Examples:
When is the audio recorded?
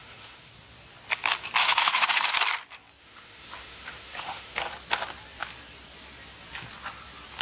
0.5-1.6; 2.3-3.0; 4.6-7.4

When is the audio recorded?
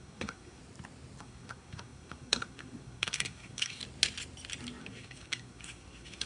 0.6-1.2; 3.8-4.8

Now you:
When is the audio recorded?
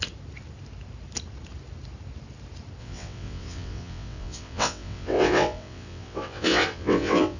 0.0-2.8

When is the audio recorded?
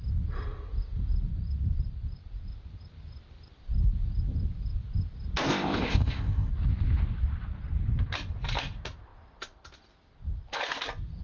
0.0-5.5; 6.5-11.2